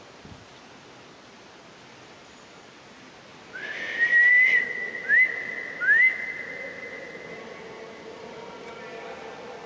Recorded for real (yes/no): yes